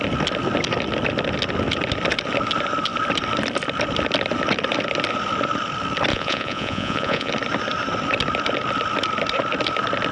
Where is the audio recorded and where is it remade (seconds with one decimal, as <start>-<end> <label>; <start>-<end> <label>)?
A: 0.0-6.1 recorded; 6.1-7.3 remade; 7.3-10.1 recorded